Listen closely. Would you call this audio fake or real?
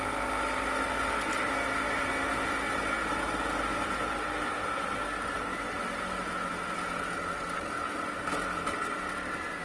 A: real